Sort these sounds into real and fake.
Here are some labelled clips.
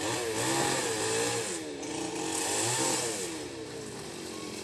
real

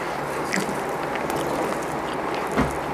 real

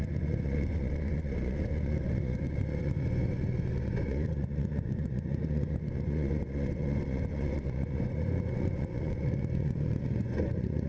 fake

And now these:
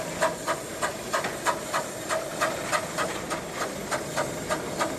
real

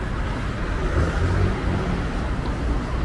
real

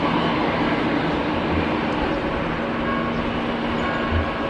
real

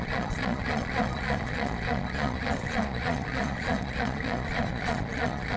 fake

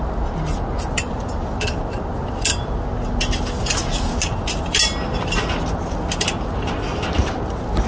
real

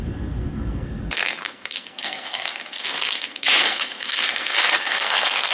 fake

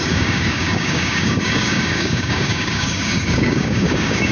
fake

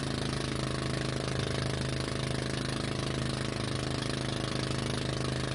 real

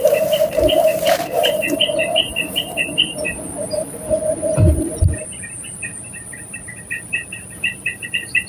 fake